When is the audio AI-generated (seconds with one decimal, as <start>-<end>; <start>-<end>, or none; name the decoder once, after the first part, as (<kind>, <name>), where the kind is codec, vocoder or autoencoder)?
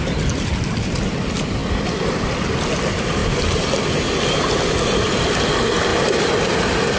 none